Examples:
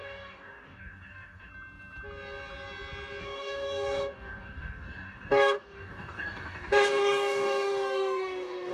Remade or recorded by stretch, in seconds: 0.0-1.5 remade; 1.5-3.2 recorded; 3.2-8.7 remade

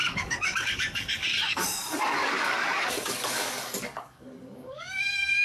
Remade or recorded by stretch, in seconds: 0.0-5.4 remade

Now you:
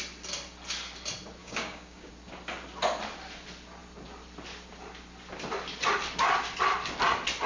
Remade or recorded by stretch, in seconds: 0.0-1.4 recorded; 1.4-2.1 remade; 2.1-7.5 recorded